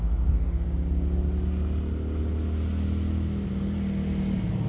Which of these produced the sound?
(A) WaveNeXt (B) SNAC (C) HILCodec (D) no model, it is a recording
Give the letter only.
D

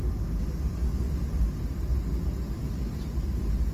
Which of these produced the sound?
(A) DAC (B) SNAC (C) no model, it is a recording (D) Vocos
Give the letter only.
C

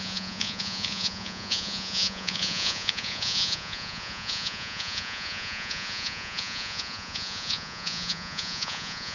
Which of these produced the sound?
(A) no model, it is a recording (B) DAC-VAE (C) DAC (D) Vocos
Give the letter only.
D